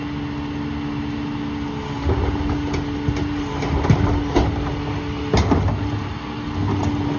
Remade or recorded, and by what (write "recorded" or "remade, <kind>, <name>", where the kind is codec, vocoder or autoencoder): recorded